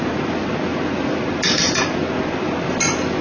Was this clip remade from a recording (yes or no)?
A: yes